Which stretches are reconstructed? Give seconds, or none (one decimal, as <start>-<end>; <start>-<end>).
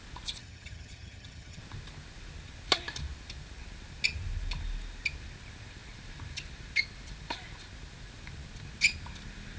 0.4-1.6